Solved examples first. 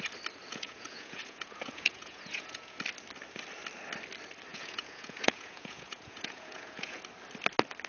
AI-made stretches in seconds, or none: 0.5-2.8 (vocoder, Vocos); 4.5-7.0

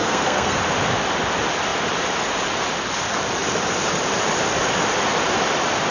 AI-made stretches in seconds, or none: 0.0-0.6 (codec, SNAC)

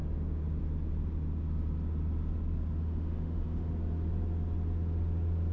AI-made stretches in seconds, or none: 2.8-3.7 (autoencoder, DAC-VAE)

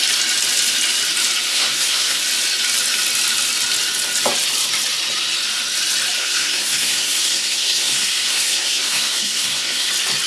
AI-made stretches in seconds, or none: 1.5-2.2 (codec, SNAC); 6.2-9.9

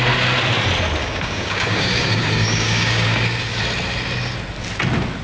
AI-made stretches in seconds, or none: 1.0-3.6 (codec, DAC)

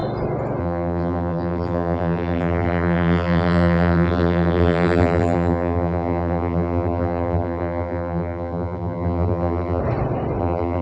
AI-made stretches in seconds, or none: 0.6-9.8 (vocoder, BigVGAN v2); 10.4-10.8

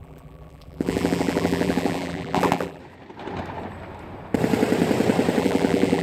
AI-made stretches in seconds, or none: 0.0-2.8 (vocoder, BigVGAN v2); 5.4-6.0

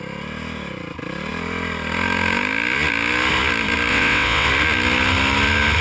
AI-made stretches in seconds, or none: 3.9-4.5 (vocoder, WaveNeXt)